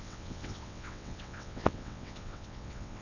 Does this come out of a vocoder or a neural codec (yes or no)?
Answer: yes